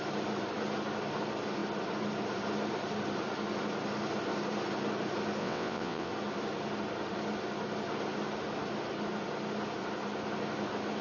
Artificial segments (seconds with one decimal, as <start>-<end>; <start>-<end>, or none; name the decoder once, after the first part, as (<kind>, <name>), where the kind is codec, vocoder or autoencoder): 5.4-6.1 (vocoder, WaveNeXt)